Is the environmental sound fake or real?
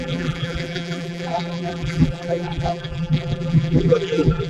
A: fake